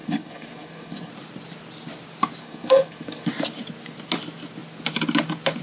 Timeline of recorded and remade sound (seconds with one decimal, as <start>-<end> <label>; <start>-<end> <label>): 0.0-1.1 remade; 1.1-2.4 recorded; 2.4-3.3 remade; 3.3-5.6 recorded